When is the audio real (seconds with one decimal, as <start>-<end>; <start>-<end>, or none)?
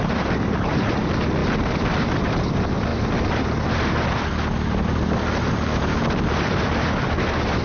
0.0-7.6